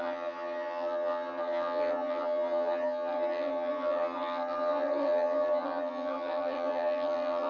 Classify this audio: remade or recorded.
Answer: remade